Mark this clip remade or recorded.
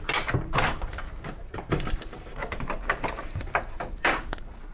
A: remade